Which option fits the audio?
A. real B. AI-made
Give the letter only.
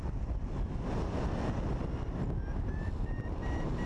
B